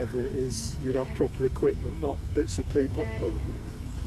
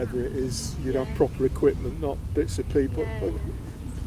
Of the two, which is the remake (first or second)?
first